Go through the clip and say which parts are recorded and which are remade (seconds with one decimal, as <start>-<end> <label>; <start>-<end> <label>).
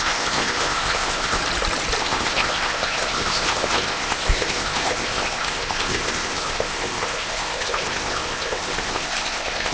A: 0.0-1.4 remade; 1.4-2.0 recorded; 2.0-9.7 remade